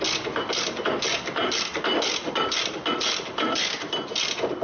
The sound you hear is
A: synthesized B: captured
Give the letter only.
B